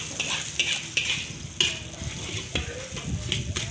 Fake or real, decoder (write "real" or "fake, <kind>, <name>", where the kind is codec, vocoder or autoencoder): real